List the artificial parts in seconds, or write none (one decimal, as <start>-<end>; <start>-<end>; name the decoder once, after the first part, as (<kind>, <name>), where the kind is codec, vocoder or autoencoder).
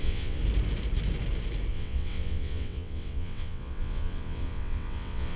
0.0-0.4 (vocoder, WaveNeXt); 1.7-5.4